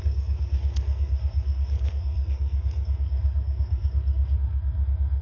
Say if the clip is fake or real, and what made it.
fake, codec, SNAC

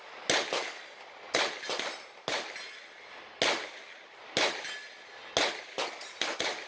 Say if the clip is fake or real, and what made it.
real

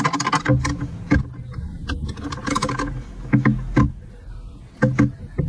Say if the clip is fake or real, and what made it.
real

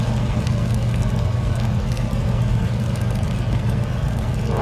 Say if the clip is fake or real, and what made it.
fake, codec, SNAC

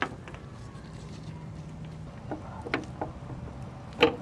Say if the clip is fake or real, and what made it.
real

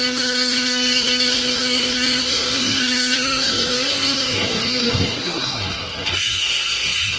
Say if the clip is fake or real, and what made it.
fake, codec, SNAC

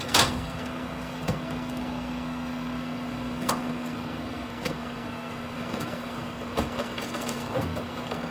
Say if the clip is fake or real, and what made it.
fake, codec, SNAC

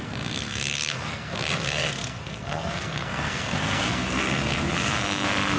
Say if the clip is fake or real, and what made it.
fake, codec, SNAC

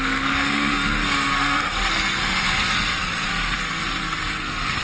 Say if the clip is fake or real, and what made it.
fake, codec, SNAC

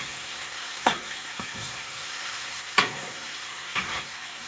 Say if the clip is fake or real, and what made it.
fake, codec, SNAC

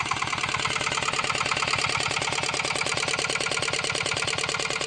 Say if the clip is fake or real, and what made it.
real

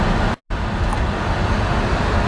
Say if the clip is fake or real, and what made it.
real